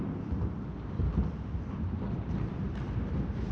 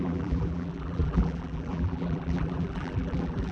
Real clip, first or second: first